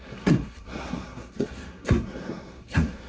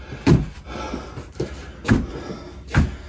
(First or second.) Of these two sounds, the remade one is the first